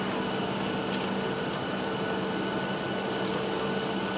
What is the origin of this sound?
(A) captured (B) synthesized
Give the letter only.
A